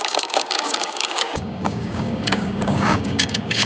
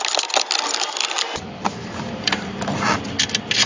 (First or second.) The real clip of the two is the second